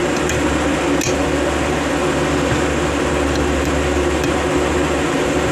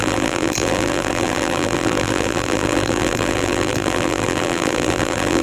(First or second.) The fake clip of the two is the second